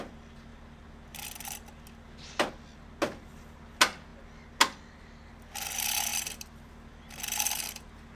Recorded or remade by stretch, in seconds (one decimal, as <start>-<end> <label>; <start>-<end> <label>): 0.0-8.2 recorded